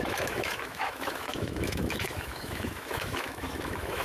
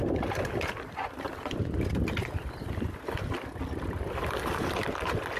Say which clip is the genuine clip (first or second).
second